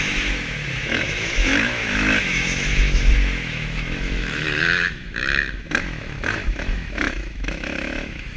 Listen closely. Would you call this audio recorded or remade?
remade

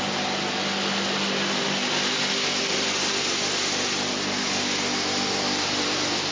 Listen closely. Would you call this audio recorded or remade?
recorded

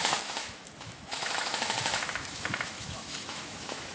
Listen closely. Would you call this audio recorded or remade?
remade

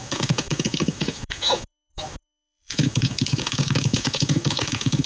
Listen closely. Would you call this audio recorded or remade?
remade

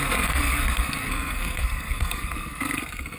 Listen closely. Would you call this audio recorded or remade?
remade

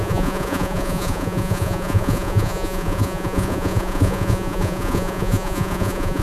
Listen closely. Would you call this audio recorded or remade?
remade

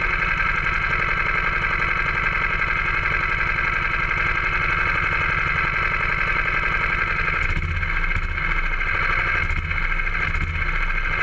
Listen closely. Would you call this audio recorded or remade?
recorded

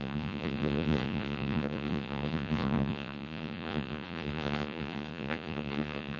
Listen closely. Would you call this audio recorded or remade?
remade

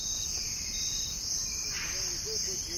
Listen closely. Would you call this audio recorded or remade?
recorded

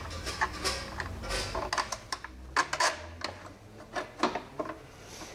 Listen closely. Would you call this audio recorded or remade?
recorded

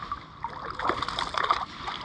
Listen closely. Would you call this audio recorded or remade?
recorded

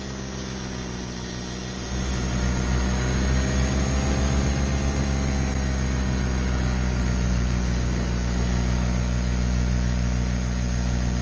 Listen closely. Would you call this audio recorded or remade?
recorded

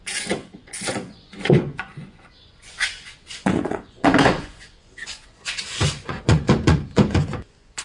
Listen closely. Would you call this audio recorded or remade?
remade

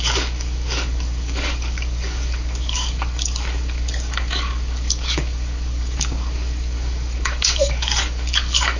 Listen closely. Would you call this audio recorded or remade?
remade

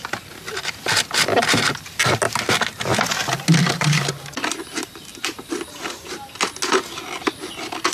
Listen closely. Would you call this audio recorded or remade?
recorded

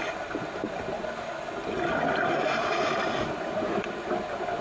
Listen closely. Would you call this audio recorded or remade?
recorded